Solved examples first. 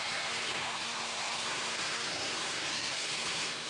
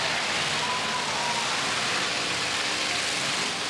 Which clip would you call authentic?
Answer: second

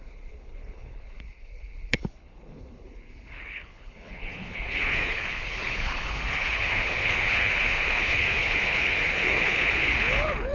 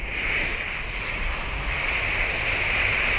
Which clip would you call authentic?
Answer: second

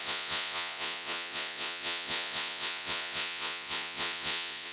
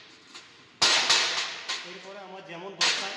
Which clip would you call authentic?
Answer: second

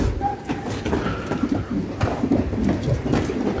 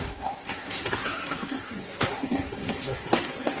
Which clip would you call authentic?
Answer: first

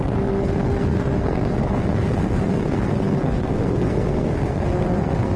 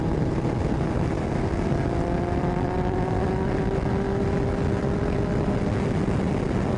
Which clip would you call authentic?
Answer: second